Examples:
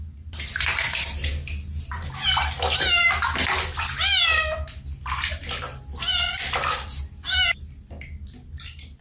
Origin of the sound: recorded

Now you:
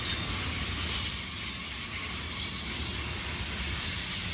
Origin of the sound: recorded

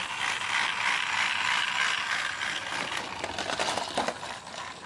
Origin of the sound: recorded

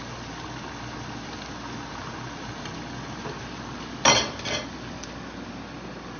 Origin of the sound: recorded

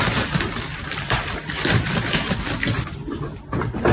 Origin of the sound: remade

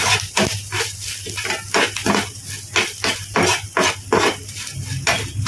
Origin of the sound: recorded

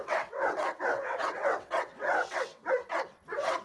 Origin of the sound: remade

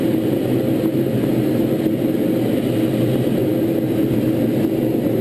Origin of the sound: recorded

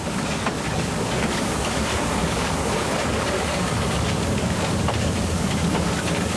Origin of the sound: remade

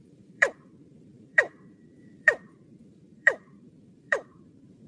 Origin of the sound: remade